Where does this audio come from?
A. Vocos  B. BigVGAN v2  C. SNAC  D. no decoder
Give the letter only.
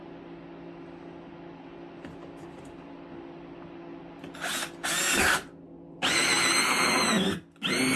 D